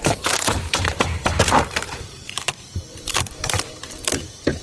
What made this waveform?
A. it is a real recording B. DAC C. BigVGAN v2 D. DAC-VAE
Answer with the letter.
C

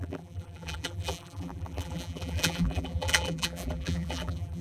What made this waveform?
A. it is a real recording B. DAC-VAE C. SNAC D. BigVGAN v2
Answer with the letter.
D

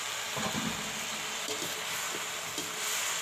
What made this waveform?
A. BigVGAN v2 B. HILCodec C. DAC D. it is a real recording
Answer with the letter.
D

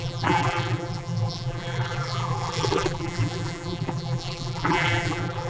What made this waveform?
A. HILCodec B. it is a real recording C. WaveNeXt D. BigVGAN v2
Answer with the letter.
D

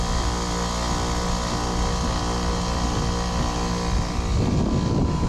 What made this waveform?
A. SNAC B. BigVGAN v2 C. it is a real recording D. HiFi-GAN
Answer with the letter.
C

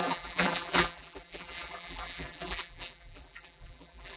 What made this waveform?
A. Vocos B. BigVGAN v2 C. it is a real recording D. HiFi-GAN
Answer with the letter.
B